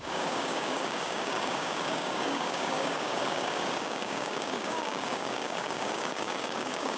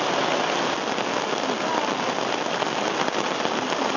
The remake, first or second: first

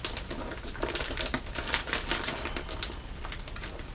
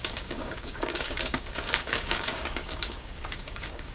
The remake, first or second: second